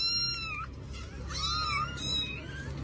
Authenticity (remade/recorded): recorded